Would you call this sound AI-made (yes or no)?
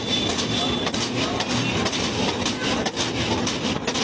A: no